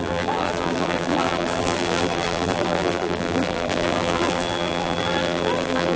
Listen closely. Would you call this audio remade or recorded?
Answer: remade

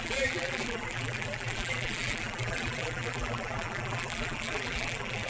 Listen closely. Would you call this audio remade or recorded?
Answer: remade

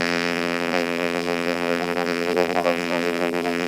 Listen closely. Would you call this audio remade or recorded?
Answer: remade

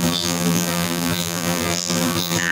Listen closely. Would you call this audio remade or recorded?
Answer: remade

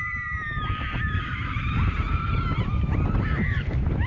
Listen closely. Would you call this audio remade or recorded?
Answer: remade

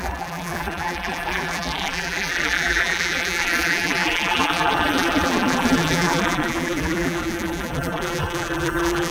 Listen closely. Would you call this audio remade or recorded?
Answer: remade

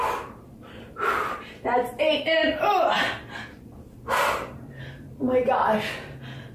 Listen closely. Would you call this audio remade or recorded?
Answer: remade